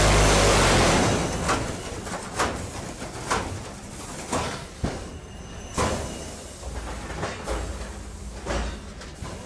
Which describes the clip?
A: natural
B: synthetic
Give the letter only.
A